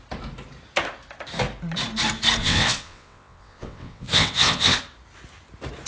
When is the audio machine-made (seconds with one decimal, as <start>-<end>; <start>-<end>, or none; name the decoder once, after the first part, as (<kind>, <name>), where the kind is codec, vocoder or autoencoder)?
2.4-4.8 (vocoder, WaveNeXt)